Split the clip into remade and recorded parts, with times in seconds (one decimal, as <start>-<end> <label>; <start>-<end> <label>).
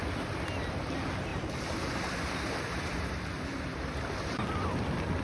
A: 0.0-1.3 recorded; 1.3-4.4 remade; 4.4-5.2 recorded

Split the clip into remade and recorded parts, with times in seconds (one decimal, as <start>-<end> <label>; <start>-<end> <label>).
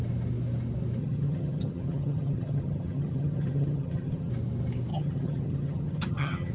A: 0.0-1.0 recorded; 1.0-4.3 remade; 4.3-4.9 recorded; 4.9-6.5 remade